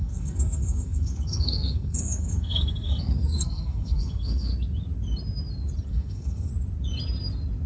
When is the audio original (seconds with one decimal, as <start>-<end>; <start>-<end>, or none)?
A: 4.5-5.9; 6.5-7.7